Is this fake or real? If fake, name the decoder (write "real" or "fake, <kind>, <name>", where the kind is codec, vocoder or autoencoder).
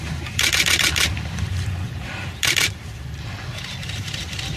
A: fake, vocoder, BigVGAN v2